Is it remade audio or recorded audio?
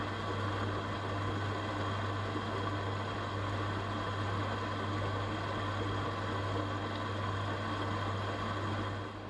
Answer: recorded